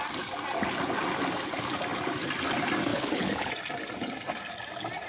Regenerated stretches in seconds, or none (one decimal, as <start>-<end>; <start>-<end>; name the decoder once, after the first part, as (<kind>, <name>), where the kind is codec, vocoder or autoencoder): 2.9-3.5 (codec, HILCodec)